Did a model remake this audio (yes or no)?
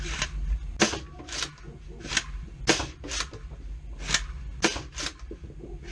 no